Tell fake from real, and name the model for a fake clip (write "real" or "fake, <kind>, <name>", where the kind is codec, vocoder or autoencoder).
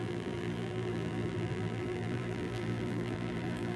fake, vocoder, BigVGAN v2